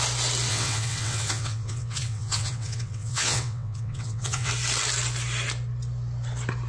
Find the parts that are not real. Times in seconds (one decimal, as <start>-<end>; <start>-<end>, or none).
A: 0.5-4.5